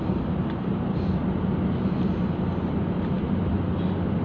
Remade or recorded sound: recorded